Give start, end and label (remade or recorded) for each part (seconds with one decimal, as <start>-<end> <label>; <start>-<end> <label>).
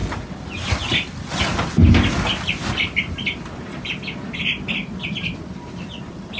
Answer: 0.0-6.4 recorded